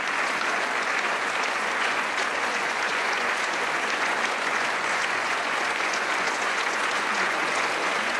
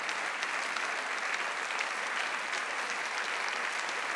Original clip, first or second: second